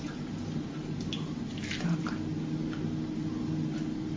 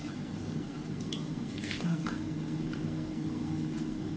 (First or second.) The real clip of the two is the first